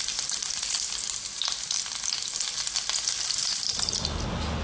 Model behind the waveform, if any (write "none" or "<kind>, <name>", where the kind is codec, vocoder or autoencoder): none